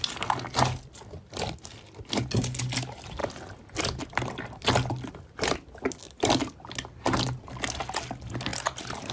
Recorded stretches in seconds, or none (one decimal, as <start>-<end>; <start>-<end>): 0.0-9.1